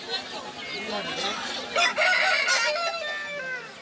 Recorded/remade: recorded